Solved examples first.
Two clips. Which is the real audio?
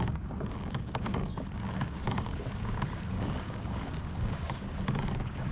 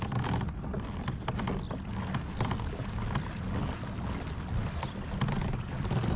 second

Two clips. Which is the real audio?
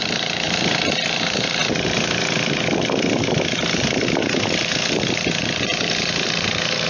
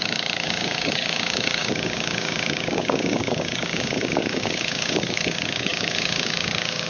first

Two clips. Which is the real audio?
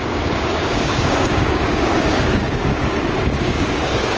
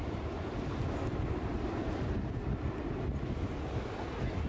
second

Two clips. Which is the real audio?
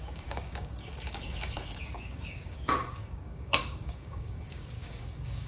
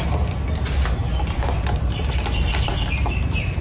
second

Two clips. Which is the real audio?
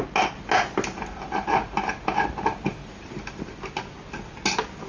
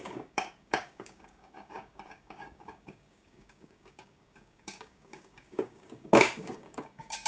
first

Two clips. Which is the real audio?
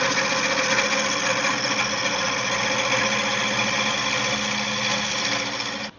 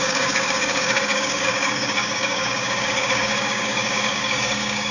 first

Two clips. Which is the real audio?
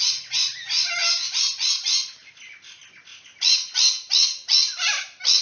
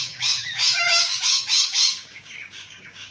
first